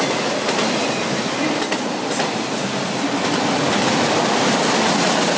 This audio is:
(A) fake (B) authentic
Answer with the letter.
B